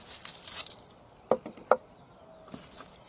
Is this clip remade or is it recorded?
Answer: recorded